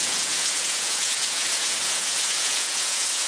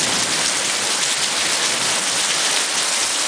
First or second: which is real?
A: second